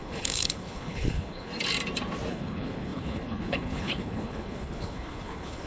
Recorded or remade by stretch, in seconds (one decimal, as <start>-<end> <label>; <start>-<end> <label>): 0.0-1.5 remade; 1.5-2.3 recorded; 2.3-5.7 remade